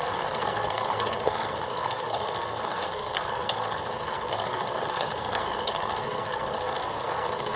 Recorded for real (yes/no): no